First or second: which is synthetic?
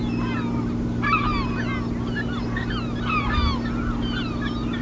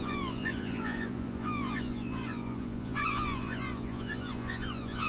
second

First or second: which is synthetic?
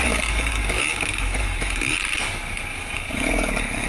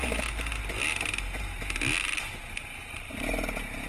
first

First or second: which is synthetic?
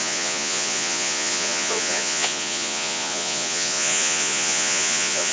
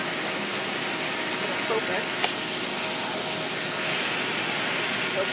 first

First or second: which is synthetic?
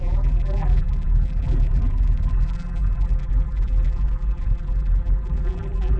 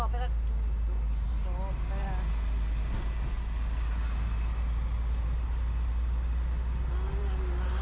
first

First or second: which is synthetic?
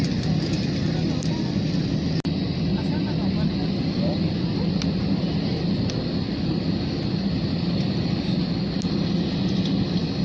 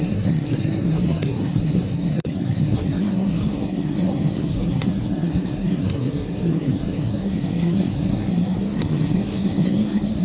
second